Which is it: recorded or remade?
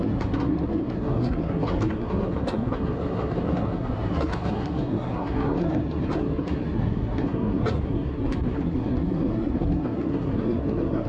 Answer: remade